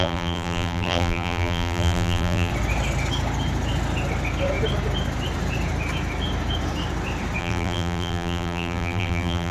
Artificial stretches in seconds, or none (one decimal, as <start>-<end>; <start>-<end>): 0.0-2.5; 7.4-9.5